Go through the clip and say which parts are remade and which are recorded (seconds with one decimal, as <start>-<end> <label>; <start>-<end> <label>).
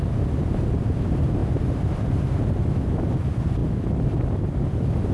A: 0.0-5.1 recorded